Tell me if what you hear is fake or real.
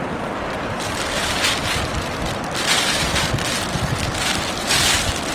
real